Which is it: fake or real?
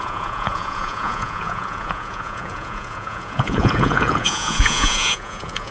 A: fake